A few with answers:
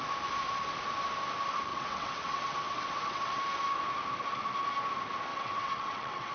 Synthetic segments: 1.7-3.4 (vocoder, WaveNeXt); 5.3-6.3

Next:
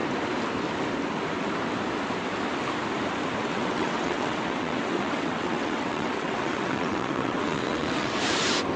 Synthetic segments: 3.4-8.2 (vocoder, WaveNeXt)

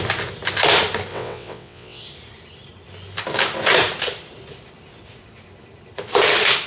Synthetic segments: 1.1-2.0 (vocoder, WaveNeXt)

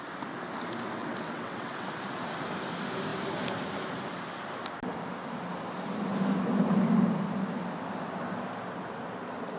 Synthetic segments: 1.0-1.9 (vocoder, WaveNeXt)

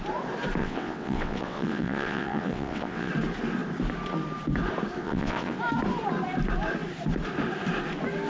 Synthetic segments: 0.6-3.1 (vocoder, WaveNeXt); 5.0-5.6

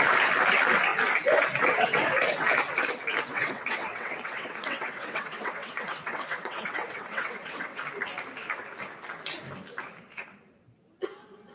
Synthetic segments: 3.3-7.8 (vocoder, WaveNeXt)

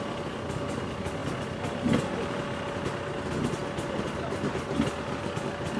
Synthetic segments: none

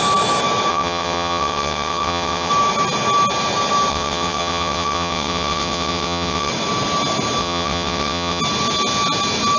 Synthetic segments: 0.7-2.5 (vocoder, WaveNeXt); 3.9-6.5; 7.4-8.4